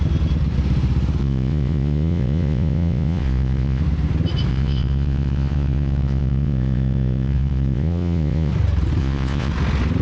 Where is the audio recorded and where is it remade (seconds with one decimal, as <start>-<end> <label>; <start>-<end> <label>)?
0.0-1.2 recorded; 1.2-3.8 remade; 3.8-4.5 recorded; 4.5-8.5 remade; 8.5-9.0 recorded; 9.0-9.5 remade; 9.5-10.0 recorded